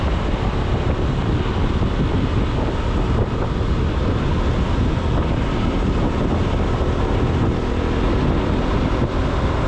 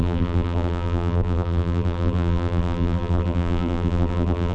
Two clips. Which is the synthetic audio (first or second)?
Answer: second